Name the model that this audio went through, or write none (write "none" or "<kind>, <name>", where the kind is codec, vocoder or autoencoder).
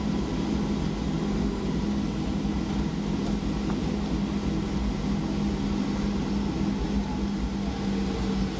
none